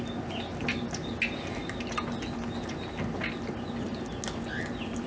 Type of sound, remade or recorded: recorded